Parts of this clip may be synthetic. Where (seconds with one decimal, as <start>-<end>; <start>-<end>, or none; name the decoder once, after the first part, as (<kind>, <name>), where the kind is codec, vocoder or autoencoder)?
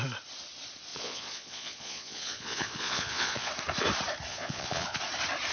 0.9-3.5 (vocoder, Vocos); 4.3-5.0